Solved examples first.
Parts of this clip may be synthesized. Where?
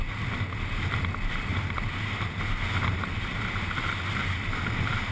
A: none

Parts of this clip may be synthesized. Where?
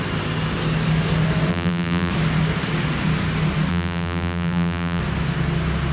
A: 1.5-2.1; 3.7-5.0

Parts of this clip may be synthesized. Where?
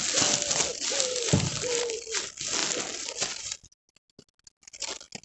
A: 0.7-1.3; 2.6-3.4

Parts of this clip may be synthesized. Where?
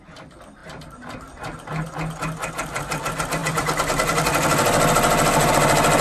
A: none